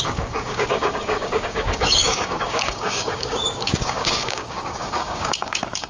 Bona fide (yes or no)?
no